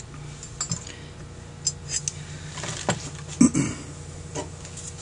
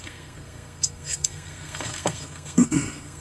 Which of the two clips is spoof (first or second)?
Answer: second